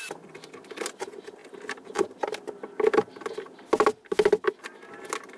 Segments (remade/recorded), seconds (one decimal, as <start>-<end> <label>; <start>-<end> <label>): 0.0-5.4 recorded